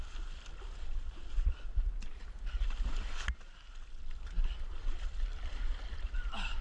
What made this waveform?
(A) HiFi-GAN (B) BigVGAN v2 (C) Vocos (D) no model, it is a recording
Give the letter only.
D